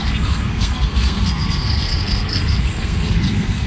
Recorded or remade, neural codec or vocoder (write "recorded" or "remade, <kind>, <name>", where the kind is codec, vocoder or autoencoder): remade, codec, SNAC